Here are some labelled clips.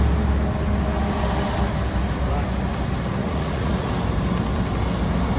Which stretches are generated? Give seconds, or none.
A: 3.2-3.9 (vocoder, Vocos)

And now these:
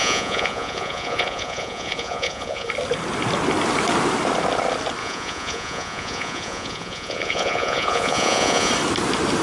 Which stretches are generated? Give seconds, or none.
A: 0.0-2.7 (vocoder, Vocos); 5.0-8.7